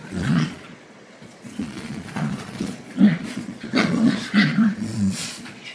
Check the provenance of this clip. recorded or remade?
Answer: remade